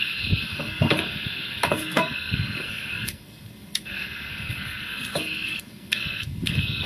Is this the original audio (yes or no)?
no